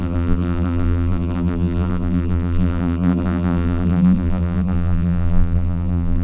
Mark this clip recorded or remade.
remade